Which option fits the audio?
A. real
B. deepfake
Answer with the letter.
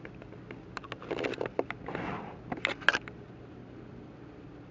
A